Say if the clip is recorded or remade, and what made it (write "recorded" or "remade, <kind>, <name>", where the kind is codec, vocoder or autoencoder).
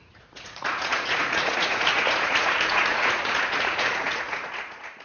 remade, vocoder, Vocos